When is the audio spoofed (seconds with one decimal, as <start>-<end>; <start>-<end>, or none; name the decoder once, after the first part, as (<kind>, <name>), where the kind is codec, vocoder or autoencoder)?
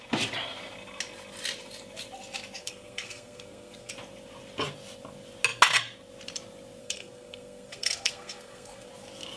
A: 2.6-3.9 (codec, SNAC); 6.8-8.9